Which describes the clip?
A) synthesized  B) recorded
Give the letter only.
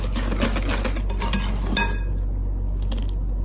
B